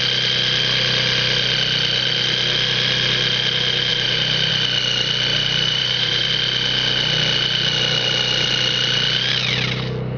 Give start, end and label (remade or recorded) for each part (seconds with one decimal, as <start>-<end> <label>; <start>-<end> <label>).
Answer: 0.0-3.9 recorded; 3.9-4.5 remade; 4.5-5.3 recorded; 5.3-6.3 remade; 6.3-10.2 recorded